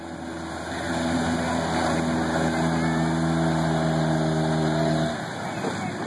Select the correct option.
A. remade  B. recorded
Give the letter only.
B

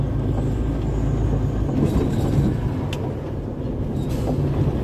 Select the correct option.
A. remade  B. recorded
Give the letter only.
B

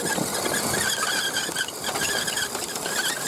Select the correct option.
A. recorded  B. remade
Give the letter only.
A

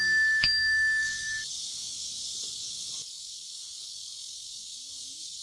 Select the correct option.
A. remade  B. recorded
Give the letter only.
A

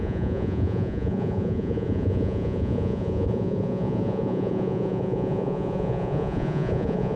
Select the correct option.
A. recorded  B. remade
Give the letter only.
B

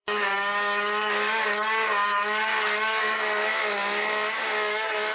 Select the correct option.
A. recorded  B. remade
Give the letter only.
B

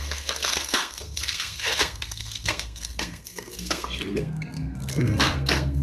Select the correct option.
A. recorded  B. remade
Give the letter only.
B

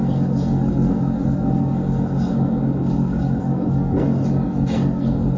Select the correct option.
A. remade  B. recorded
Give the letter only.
A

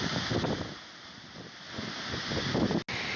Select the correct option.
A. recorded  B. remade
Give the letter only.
A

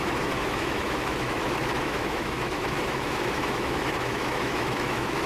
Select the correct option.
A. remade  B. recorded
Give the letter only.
A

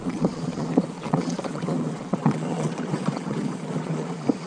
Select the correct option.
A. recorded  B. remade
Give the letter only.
B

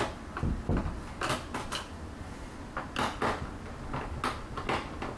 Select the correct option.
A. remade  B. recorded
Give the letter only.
B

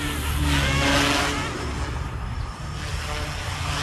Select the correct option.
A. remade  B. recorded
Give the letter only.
B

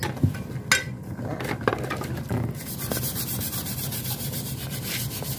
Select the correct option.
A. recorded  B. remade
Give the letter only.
A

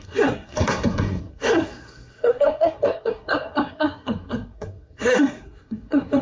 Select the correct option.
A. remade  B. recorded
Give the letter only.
A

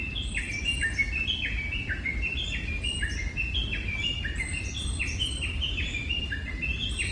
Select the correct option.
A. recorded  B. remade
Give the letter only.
A